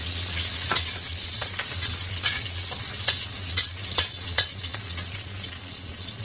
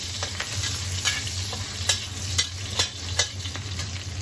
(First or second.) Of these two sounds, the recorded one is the second